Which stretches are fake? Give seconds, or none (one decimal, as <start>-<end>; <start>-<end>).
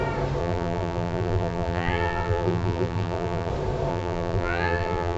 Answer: 0.4-3.5; 3.9-5.2